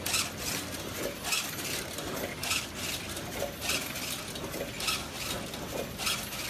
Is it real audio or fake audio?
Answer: real